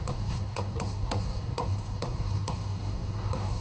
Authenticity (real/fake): fake